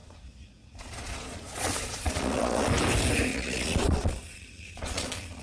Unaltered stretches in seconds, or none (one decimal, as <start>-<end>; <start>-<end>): 2.7-3.3